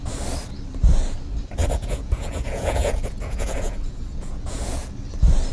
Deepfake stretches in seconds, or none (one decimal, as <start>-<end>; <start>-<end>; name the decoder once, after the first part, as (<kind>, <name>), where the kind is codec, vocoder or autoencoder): 1.6-4.9 (vocoder, Vocos)